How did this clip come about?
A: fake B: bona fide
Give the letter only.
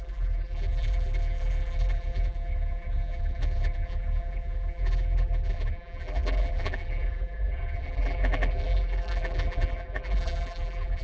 A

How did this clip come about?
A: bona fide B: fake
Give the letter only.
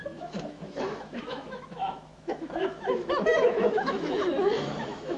B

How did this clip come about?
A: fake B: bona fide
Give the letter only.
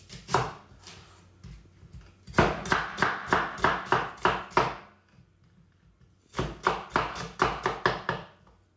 B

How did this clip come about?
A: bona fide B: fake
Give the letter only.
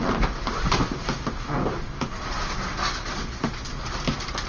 A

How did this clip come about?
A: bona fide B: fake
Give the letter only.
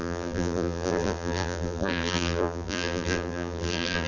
B